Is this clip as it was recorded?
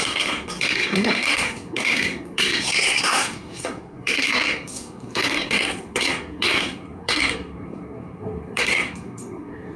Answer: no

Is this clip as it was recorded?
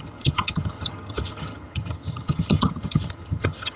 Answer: no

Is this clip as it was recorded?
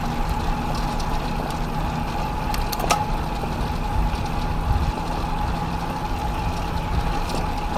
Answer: yes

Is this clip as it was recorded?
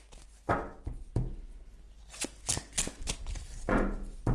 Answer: yes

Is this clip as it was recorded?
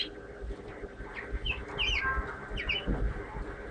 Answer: yes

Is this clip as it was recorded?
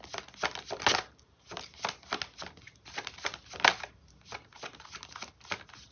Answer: yes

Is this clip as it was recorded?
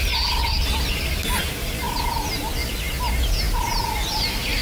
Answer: yes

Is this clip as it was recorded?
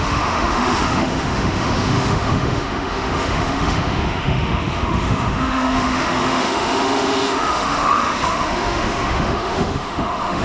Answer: no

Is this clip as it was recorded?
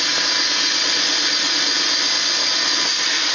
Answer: yes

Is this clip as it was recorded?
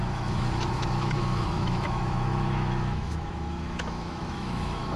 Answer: no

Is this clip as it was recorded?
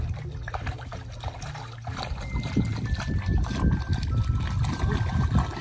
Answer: yes